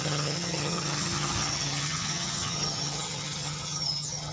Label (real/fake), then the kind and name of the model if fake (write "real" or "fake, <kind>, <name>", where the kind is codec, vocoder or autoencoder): fake, vocoder, HiFi-GAN